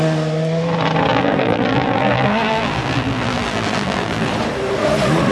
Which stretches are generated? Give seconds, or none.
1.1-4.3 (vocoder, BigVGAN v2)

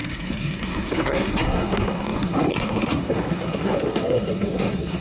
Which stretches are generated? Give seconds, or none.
0.0-5.0 (codec, SNAC)

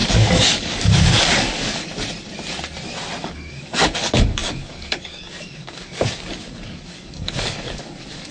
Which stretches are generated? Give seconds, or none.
0.0-1.9 (codec, DAC); 3.2-8.3

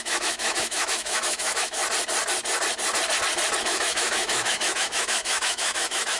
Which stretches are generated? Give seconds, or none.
0.0-1.8 (autoencoder, DAC-VAE); 3.6-6.2